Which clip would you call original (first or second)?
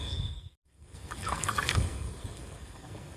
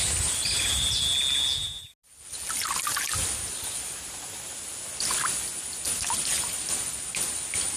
second